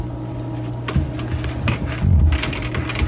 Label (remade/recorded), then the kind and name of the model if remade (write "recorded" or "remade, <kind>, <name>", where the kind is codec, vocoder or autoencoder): recorded